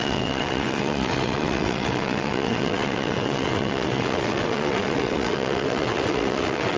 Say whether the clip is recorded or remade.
remade